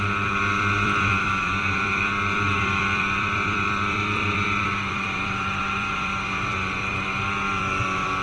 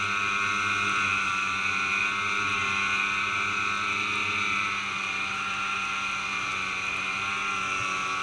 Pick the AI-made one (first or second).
first